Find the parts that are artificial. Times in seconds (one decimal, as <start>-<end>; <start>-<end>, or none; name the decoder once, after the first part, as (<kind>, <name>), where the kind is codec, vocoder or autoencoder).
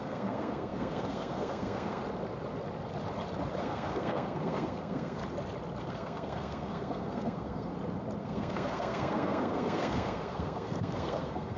0.0-2.0 (codec, SNAC); 3.6-5.2; 5.8-7.7; 8.2-11.6